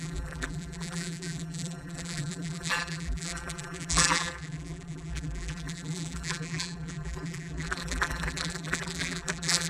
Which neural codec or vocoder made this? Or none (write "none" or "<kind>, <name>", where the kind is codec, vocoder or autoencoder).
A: vocoder, BigVGAN v2